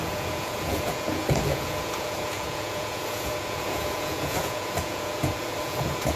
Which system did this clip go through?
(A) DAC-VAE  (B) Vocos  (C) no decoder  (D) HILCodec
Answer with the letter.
B